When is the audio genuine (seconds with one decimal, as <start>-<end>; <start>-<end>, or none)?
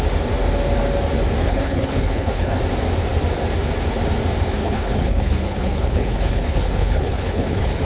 0.0-1.4; 2.6-4.6